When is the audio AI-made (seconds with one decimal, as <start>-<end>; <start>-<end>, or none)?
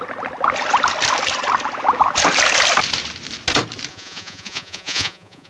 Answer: 3.9-5.5